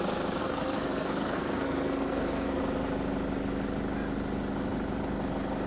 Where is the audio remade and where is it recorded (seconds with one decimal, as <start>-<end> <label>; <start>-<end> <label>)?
0.0-0.4 recorded; 0.4-2.6 remade; 2.6-5.7 recorded